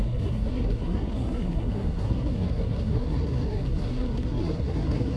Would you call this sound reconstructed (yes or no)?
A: yes